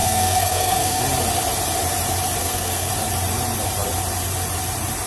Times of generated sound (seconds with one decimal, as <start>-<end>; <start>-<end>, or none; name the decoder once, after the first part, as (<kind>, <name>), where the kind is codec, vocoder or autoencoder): 0.0-1.0 (codec, SNAC); 2.4-2.9